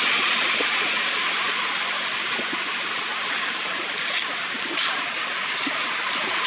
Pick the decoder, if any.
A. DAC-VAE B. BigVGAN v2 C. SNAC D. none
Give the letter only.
D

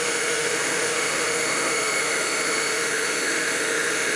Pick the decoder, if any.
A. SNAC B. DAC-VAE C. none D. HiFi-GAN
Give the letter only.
B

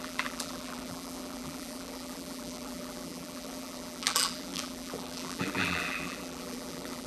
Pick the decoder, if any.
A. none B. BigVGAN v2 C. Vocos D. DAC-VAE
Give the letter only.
B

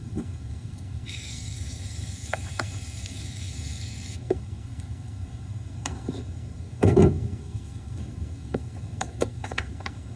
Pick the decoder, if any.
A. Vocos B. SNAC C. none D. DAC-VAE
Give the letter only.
B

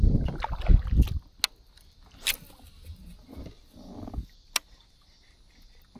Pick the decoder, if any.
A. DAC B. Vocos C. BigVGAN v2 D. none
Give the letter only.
D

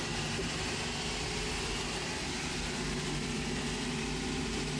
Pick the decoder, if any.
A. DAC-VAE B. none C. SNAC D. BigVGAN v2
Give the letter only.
B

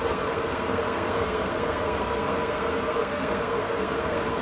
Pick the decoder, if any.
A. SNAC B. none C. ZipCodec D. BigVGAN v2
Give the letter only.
A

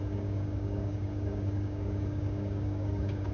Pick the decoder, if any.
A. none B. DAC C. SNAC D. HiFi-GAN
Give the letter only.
B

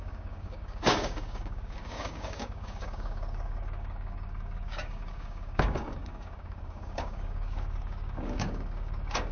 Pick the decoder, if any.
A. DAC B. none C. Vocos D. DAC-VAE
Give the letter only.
A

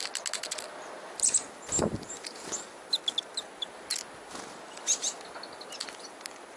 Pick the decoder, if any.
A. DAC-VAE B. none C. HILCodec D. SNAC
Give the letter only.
B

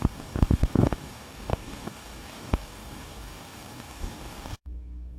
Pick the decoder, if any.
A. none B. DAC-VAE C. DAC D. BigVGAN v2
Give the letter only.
C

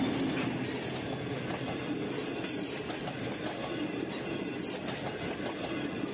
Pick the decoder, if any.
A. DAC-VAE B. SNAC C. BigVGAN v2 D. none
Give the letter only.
D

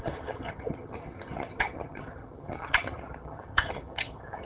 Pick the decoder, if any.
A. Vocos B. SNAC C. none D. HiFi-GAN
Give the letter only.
D